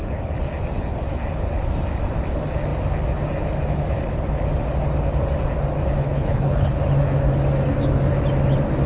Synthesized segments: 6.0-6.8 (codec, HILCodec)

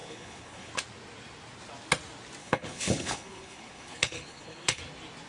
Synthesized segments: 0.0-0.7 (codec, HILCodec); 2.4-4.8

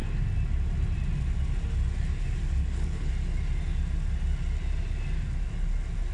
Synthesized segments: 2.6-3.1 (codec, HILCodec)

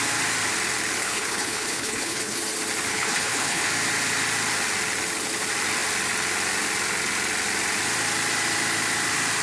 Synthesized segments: 1.0-2.4 (codec, HILCodec); 2.9-3.7

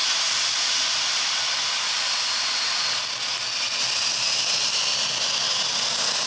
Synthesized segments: none

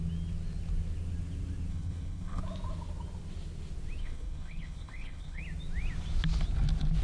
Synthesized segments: 1.7-2.4 (codec, HILCodec); 4.0-5.4